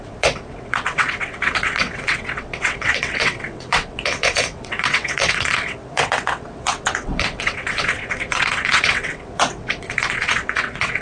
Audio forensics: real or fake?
fake